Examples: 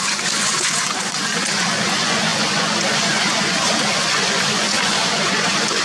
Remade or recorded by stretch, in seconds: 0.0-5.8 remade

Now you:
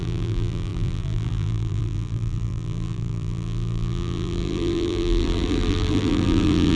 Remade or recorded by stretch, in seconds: 0.0-6.8 remade

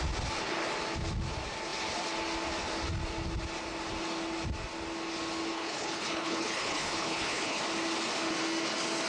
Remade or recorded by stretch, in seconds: 0.0-5.5 recorded; 5.5-7.6 remade; 7.6-9.1 recorded

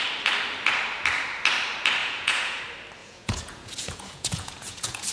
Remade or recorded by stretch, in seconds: 0.0-2.0 recorded; 2.0-2.6 remade; 2.6-3.0 recorded; 3.0-5.1 remade